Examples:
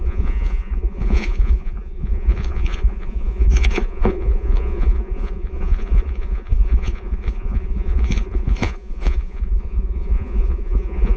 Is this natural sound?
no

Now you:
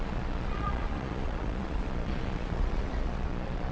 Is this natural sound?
no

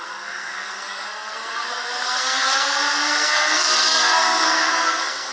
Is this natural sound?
no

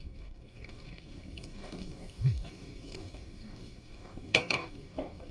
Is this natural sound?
no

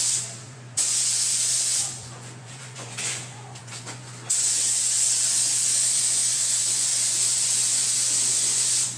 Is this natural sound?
no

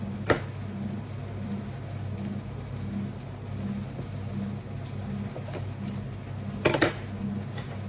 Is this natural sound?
yes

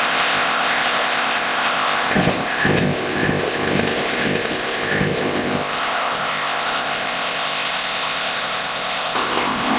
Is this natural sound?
no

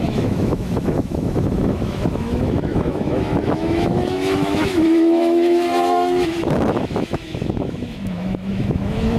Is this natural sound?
no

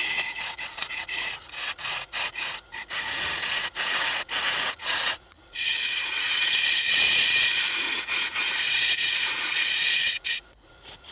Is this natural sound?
no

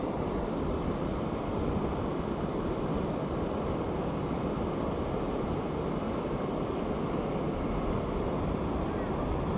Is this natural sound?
yes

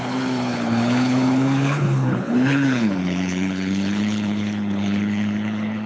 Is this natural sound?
no